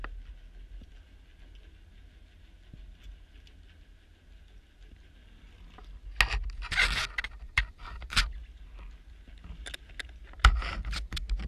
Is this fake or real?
real